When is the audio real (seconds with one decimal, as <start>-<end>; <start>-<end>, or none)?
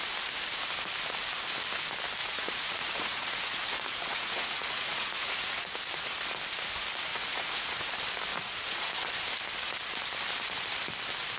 0.0-2.2; 5.6-7.1; 7.9-8.3; 8.9-11.4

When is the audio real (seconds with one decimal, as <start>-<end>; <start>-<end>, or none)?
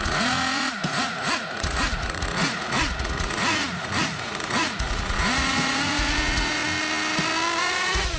6.6-7.6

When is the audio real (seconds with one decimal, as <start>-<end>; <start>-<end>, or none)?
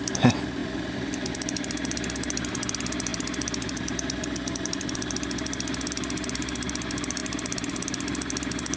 0.0-8.8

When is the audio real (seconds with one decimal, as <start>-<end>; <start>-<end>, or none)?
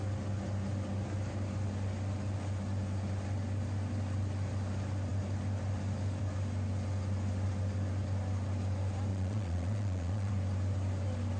0.0-9.1; 10.3-11.4